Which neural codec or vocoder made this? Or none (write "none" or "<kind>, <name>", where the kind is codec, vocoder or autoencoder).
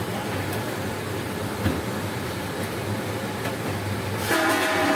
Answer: none